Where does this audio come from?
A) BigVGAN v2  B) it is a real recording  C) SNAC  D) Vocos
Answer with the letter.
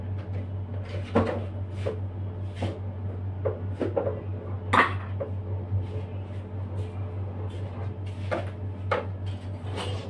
B